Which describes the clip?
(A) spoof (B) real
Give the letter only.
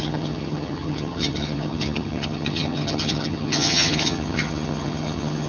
A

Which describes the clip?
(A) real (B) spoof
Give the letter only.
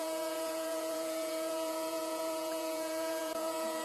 B